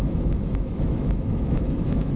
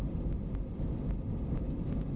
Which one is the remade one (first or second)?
first